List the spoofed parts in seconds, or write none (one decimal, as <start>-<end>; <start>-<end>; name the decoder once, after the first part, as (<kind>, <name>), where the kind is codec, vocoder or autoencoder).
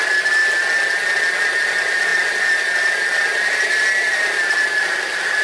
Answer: 0.0-0.4 (vocoder, BigVGAN v2); 1.2-5.4